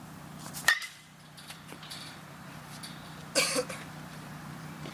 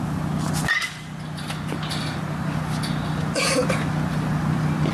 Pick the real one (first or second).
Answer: second